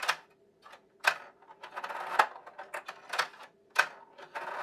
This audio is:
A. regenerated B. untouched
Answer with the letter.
B